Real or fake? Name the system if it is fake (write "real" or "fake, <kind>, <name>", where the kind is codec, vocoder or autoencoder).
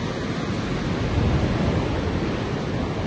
real